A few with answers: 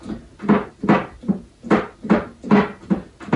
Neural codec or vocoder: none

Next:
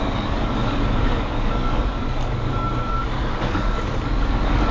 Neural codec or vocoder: codec, DAC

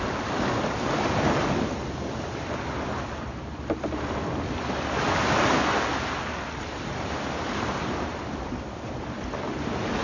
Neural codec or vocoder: none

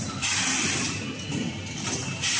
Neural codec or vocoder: none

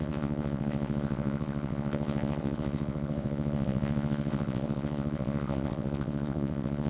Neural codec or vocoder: vocoder, WaveNeXt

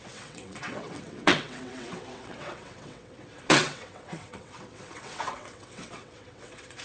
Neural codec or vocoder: vocoder, WaveNeXt